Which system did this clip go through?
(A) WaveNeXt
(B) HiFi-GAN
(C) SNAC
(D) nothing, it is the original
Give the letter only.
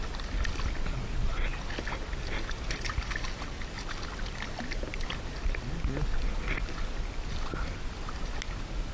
D